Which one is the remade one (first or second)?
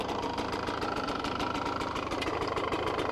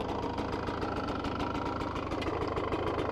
first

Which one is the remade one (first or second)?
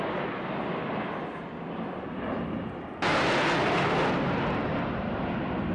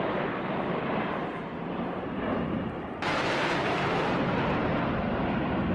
second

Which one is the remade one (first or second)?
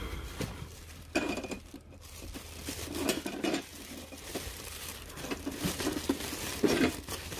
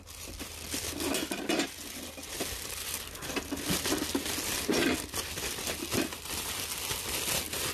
first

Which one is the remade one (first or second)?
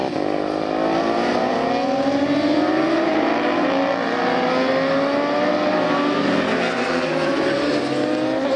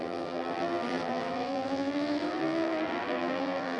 second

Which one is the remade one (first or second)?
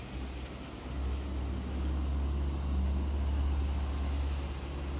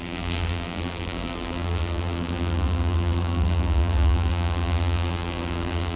second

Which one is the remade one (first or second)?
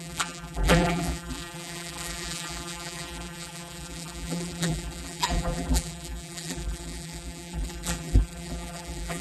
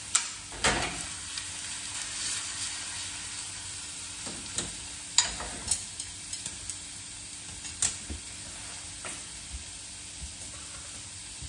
first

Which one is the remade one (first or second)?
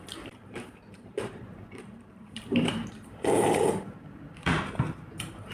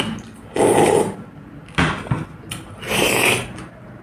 first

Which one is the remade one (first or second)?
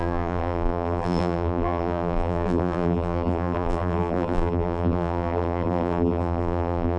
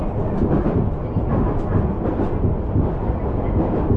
first